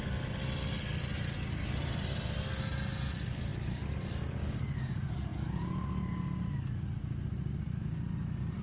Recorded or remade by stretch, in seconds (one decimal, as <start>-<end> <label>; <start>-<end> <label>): 0.0-8.6 recorded